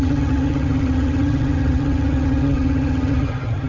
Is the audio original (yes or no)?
no